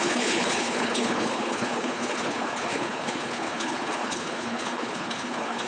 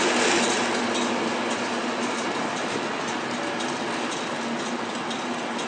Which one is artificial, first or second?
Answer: first